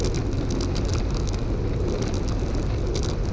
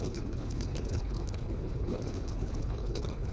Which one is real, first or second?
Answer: first